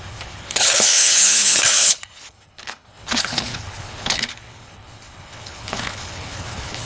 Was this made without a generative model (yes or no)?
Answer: no